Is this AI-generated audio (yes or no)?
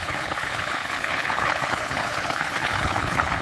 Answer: yes